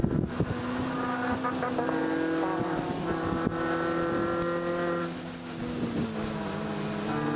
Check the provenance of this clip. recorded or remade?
recorded